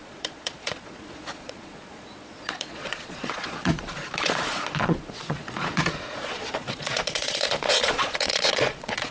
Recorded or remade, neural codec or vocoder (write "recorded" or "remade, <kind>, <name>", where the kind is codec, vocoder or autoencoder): remade, vocoder, Vocos